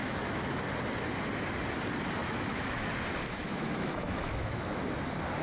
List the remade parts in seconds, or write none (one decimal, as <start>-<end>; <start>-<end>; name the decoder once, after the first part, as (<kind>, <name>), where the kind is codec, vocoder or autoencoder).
0.0-0.6 (autoencoder, DAC-VAE); 2.2-2.9; 3.4-4.8